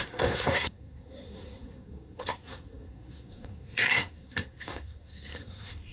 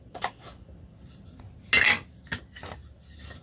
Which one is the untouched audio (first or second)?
second